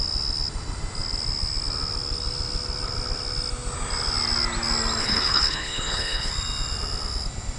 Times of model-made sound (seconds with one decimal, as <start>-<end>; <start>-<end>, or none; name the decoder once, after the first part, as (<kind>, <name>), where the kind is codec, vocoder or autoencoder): 5.0-6.3 (codec, HILCodec)